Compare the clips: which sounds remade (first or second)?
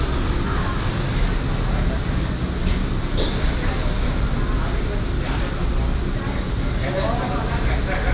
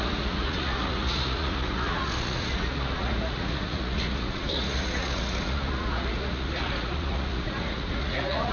second